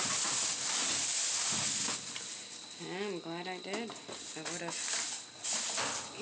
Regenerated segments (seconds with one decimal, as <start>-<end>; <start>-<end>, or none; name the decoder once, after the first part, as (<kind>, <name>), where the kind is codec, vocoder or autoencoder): none